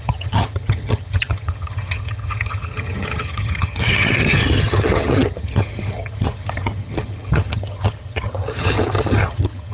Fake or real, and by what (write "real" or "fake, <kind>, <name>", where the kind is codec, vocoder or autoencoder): fake, vocoder, HiFi-GAN